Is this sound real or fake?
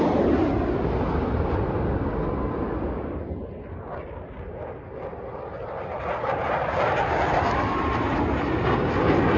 real